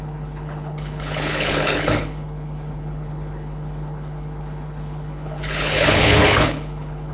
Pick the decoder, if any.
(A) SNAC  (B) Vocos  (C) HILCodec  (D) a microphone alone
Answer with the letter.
C